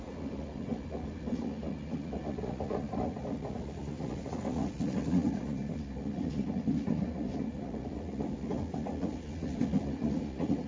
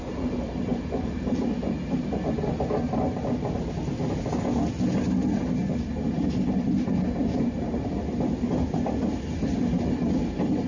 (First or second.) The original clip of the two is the second